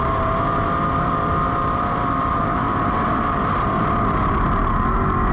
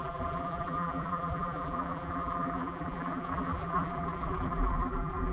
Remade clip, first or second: second